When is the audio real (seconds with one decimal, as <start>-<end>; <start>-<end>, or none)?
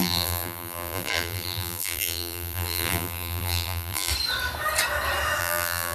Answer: 4.1-5.4